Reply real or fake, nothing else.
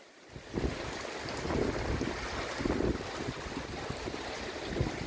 real